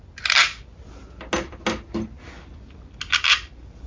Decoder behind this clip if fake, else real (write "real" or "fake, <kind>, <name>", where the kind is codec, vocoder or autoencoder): real